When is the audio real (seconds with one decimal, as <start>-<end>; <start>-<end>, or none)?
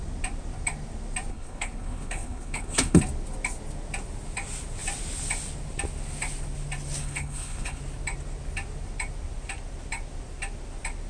0.0-1.3; 3.0-7.0; 7.8-11.1